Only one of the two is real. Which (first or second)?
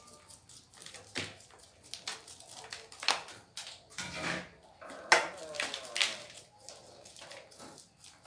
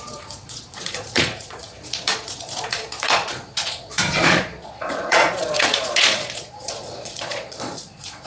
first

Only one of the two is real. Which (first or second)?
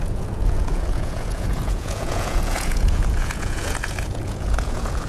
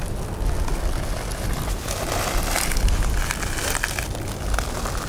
second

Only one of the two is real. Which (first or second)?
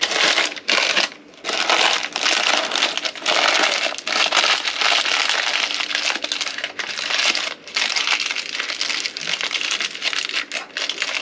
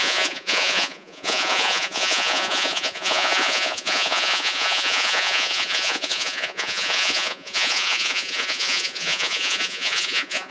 first